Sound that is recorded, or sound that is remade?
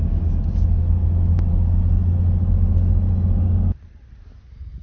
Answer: recorded